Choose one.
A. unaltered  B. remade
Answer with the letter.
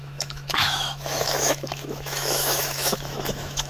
B